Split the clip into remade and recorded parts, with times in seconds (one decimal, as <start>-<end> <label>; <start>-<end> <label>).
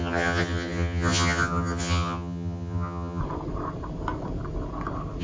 0.0-3.2 remade; 3.2-5.2 recorded